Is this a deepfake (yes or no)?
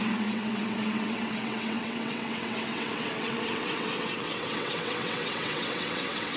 yes